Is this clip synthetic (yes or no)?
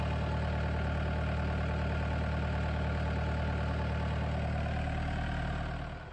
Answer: no